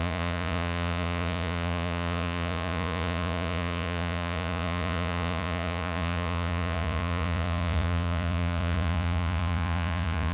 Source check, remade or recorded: remade